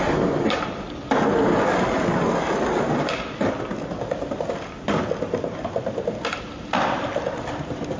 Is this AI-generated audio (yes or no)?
no